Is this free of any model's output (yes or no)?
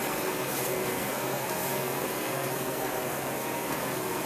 no